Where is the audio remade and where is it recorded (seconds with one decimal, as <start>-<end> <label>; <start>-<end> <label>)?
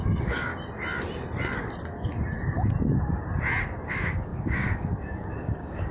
0.0-0.5 remade; 0.5-3.9 recorded; 3.9-5.9 remade